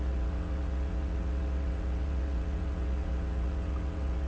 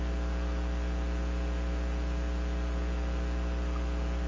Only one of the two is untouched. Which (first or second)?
second